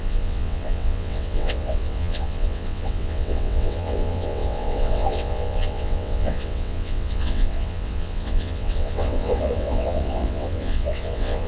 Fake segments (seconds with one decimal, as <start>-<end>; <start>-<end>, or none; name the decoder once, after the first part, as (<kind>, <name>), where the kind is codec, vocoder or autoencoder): 0.0-11.5 (vocoder, WaveNeXt)